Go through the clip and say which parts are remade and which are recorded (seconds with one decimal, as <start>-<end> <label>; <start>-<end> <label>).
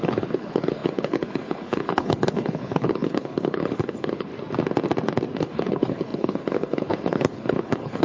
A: 0.0-4.3 remade; 4.3-5.4 recorded; 5.4-8.0 remade